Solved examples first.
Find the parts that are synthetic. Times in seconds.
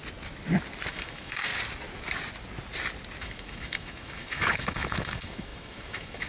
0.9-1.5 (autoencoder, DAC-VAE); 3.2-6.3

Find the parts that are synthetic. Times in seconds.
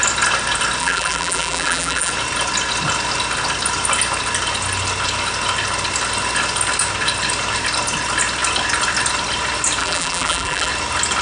0.8-2.1 (vocoder, BigVGAN v2); 9.8-10.7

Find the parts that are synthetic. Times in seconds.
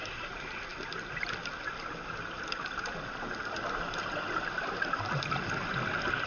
none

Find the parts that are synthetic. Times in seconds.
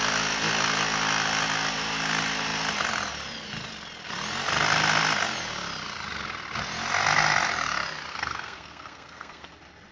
8.1-9.5 (codec, SNAC)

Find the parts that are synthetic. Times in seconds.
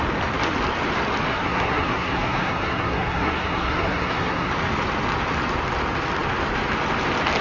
1.3-4.5 (codec, SNAC)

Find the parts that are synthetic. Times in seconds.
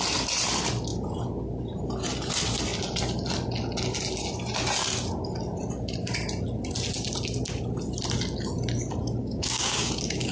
9.2-10.3 (codec, DAC)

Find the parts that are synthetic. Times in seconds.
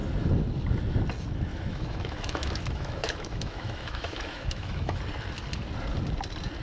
1.5-5.0 (autoencoder, DAC-VAE)